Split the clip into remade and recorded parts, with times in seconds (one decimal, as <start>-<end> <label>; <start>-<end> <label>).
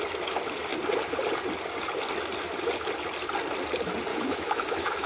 0.0-4.1 recorded; 4.1-5.1 remade